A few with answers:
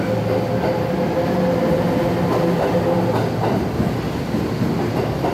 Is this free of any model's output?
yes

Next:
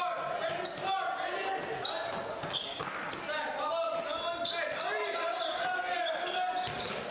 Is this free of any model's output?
yes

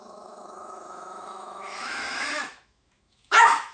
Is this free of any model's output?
no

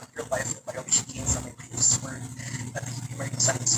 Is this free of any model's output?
yes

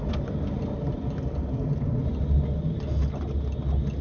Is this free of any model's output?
yes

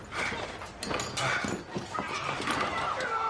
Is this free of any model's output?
yes